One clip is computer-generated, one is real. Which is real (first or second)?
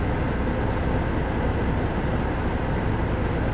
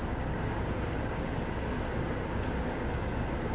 first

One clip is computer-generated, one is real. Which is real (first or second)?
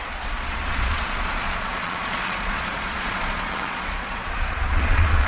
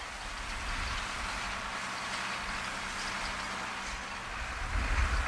second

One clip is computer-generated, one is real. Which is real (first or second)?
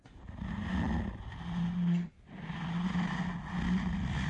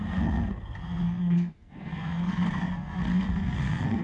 first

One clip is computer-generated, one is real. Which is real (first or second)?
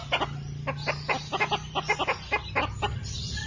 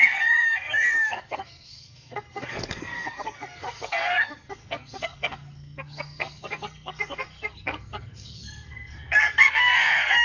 first